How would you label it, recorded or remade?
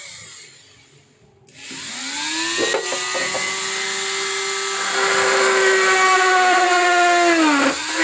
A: recorded